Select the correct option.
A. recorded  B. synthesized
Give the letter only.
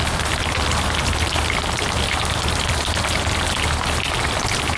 A